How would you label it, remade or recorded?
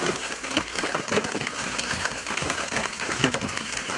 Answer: remade